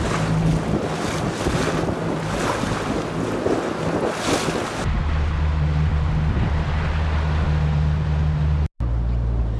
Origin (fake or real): real